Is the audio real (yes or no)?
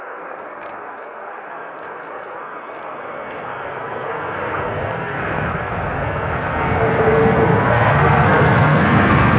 no